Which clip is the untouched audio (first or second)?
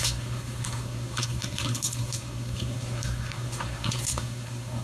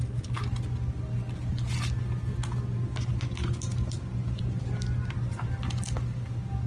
second